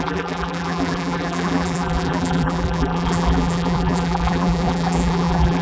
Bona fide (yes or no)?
no